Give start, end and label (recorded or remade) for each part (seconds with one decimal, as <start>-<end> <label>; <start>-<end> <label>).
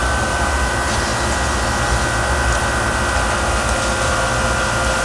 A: 0.0-5.0 recorded